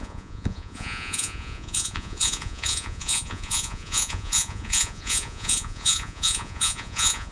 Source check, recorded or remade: remade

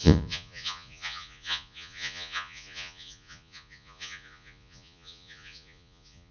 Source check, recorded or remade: remade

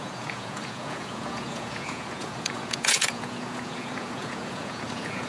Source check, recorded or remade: remade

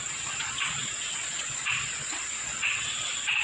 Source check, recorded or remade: remade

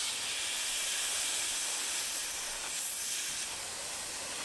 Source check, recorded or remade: recorded